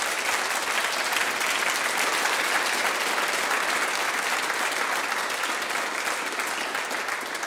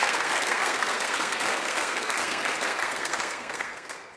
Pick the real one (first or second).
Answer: first